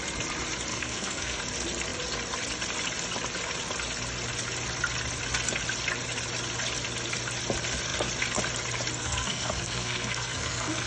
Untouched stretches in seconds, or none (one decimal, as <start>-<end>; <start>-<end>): 0.0-0.7; 1.4-9.0